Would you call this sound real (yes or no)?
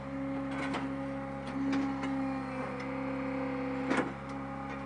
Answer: yes